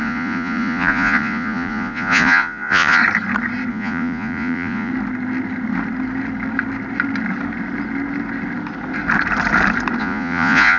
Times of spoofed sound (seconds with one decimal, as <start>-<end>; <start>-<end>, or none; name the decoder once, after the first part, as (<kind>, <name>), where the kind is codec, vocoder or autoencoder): 0.0-3.0 (vocoder, Vocos); 3.7-4.9; 10.0-10.8